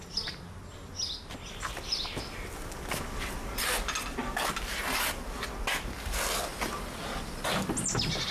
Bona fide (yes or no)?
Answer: yes